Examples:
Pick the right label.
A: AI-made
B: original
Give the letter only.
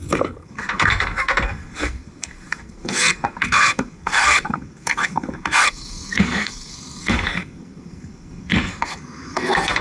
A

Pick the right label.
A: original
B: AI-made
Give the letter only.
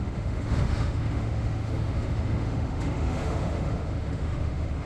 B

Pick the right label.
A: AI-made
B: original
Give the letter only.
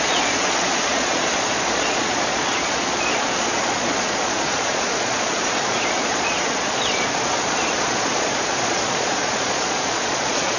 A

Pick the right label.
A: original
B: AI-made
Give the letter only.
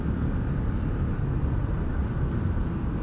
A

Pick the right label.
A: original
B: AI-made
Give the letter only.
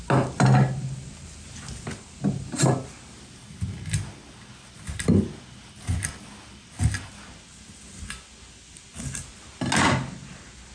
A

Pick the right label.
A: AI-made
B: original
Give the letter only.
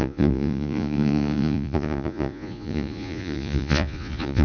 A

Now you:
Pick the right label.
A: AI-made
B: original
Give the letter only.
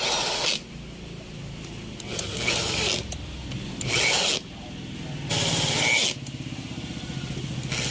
B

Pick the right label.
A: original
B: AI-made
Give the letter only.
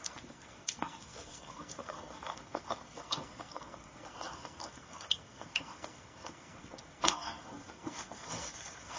B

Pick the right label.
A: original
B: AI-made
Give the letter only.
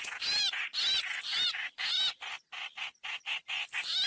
A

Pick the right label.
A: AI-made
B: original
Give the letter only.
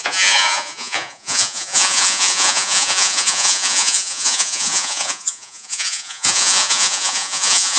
A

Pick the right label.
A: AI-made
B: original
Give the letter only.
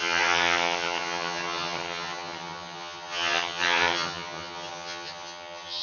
A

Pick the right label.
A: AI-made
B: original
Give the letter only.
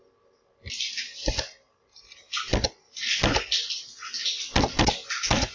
B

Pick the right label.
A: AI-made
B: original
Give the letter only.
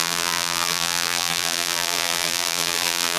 A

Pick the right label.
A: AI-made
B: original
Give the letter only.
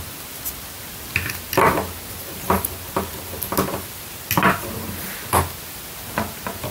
B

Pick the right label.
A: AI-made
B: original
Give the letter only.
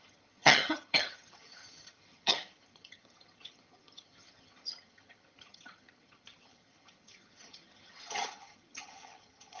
A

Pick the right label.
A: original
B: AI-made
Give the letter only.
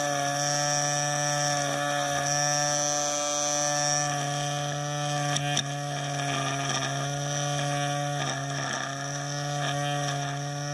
A